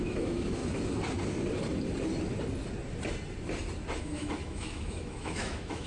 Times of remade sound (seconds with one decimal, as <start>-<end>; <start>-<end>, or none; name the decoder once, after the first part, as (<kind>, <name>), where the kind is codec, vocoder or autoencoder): 0.0-0.6 (autoencoder, DAC-VAE); 4.0-5.9